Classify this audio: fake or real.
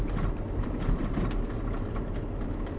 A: real